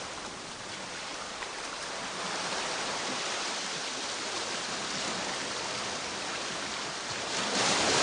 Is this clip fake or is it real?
real